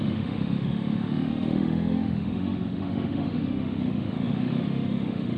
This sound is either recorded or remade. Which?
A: remade